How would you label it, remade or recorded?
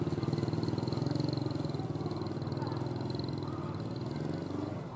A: recorded